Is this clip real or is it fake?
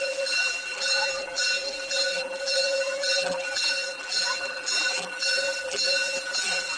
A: fake